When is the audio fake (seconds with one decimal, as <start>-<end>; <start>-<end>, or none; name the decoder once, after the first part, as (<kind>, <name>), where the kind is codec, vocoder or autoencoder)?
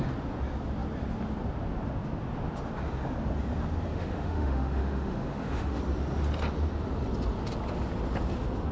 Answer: 3.9-5.8 (autoencoder, DAC-VAE)